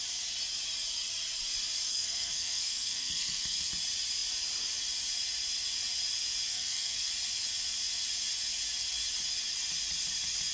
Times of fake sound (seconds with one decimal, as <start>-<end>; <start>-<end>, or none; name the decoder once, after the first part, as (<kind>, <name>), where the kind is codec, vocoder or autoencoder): 1.9-3.7 (codec, SNAC); 6.5-7.1